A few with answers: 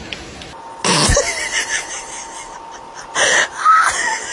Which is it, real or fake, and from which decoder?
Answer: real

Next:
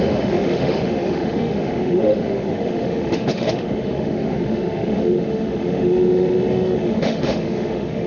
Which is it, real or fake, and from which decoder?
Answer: fake, autoencoder, DAC-VAE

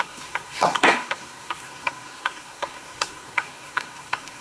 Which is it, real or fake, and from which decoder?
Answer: fake, codec, SNAC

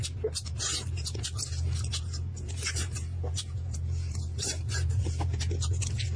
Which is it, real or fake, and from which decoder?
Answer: real